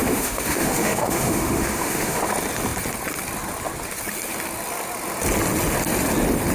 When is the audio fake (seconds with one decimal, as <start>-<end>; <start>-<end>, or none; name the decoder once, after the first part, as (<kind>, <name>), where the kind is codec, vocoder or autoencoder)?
0.0-2.2 (autoencoder, DAC-VAE)

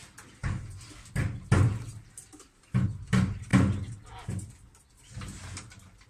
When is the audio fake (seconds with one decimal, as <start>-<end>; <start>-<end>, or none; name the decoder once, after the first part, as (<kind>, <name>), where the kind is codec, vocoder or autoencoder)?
none

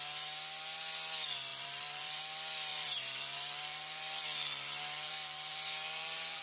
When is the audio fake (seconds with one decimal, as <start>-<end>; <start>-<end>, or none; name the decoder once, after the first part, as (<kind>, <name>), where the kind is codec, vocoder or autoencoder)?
1.5-2.2 (vocoder, BigVGAN v2); 2.7-5.1; 5.5-6.4

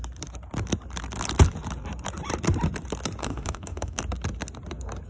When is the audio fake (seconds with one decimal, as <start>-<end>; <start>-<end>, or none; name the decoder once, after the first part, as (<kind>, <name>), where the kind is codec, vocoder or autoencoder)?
3.2-4.0 (autoencoder, DAC-VAE)

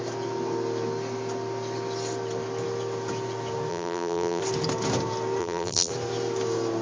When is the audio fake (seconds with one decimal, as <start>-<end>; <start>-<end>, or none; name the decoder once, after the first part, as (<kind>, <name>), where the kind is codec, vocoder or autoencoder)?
3.7-4.4 (vocoder, BigVGAN v2); 5.4-5.9